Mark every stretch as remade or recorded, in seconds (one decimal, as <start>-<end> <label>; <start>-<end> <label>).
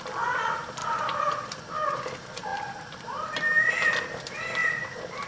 0.0-0.8 recorded; 0.8-1.6 remade; 1.6-2.5 recorded; 2.5-3.7 remade; 3.7-4.6 recorded; 4.6-5.3 remade